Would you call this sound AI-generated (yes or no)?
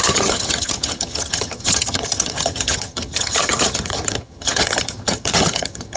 yes